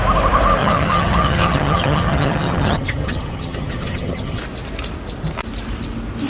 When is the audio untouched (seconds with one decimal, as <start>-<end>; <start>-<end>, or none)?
0.0-0.6; 4.4-6.3